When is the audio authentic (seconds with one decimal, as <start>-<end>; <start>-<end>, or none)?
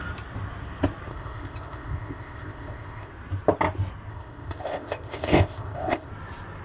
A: 0.0-1.1; 3.1-4.1; 6.1-6.6